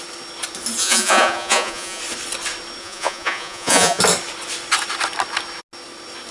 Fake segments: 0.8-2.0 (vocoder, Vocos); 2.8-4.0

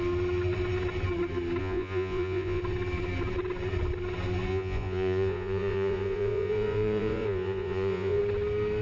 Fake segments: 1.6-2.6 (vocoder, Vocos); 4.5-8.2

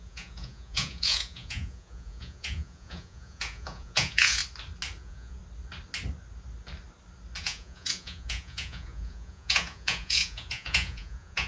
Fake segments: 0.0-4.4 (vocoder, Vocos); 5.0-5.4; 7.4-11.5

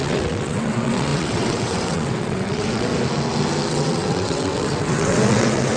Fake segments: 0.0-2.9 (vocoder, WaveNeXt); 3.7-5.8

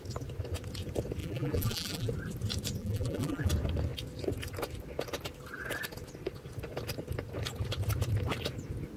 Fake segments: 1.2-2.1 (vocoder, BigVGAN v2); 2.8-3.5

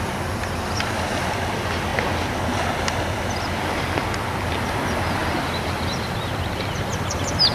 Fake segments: 5.2-7.5 (vocoder, BigVGAN v2)

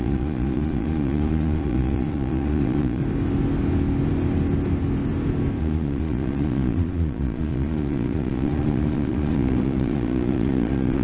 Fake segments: 0.0-3.0 (vocoder, Vocos); 5.6-11.0